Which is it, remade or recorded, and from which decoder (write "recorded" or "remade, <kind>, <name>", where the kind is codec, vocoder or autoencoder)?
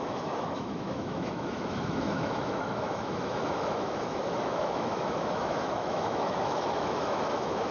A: remade, autoencoder, DAC-VAE